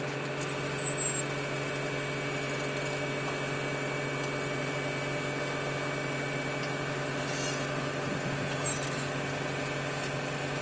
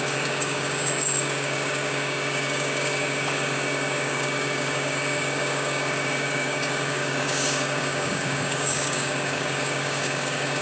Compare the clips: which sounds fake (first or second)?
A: second